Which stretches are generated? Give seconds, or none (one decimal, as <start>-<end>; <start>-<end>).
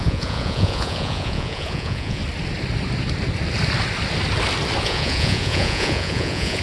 0.0-2.2; 4.8-6.6